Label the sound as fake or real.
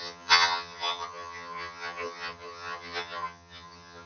fake